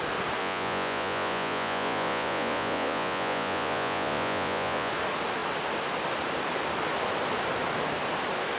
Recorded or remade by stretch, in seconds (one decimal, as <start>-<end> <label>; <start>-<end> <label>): 0.0-0.4 recorded; 0.4-4.9 remade; 4.9-8.6 recorded